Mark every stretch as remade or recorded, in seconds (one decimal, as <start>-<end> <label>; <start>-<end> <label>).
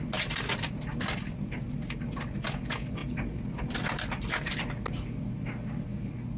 0.0-3.0 recorded; 3.0-4.5 remade; 4.5-6.4 recorded